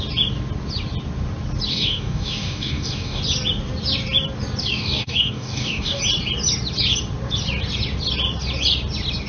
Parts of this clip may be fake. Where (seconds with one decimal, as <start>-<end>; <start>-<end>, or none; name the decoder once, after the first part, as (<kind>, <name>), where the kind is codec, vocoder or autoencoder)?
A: 1.7-3.2 (codec, DAC); 4.7-6.0